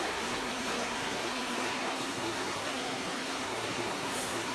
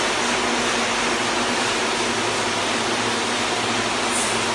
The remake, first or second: first